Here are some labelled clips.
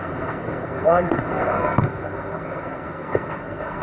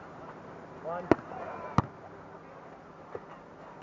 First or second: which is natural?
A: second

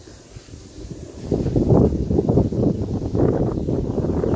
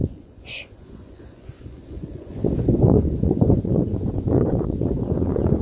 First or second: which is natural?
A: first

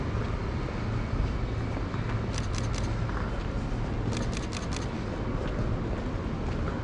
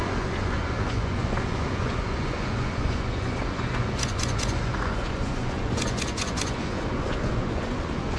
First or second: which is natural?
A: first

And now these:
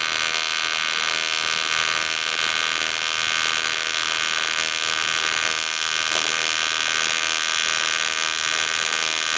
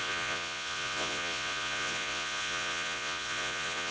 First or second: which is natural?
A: first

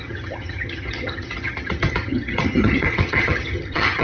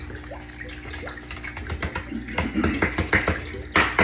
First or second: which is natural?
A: second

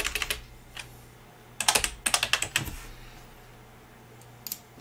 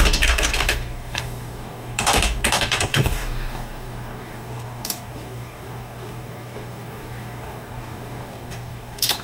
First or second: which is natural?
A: first